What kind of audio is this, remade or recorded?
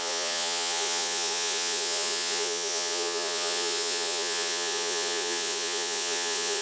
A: remade